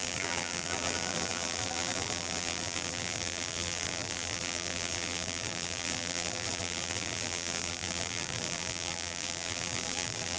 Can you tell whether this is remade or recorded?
remade